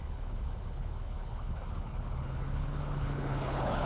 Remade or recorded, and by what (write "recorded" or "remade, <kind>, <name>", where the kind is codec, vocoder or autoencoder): remade, codec, HILCodec